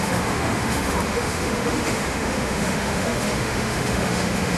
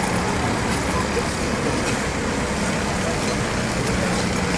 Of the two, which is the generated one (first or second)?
first